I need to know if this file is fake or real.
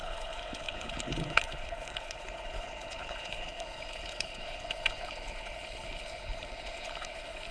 fake